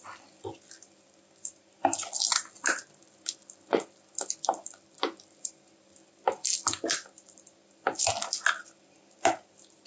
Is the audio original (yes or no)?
yes